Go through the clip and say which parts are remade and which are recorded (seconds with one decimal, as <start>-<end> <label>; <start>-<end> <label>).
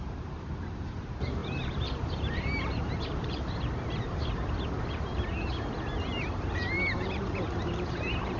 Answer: 0.0-8.4 remade